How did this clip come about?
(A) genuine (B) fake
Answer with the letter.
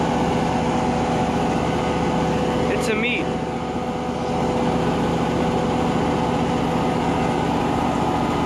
A